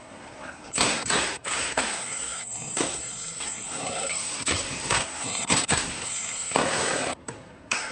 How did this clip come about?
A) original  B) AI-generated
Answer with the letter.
B